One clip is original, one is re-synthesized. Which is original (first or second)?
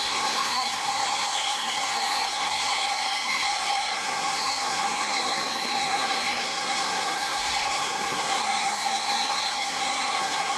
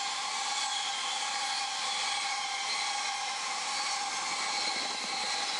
second